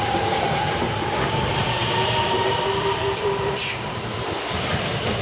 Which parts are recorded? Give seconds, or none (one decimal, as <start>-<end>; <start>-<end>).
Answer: 0.0-1.6; 4.7-5.2